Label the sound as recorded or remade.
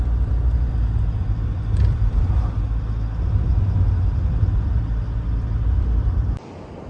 recorded